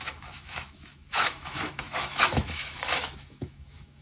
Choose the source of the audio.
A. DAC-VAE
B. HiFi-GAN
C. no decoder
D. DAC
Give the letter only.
A